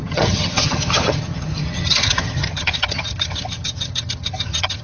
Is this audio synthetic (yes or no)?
yes